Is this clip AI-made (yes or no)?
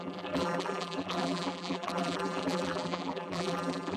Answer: yes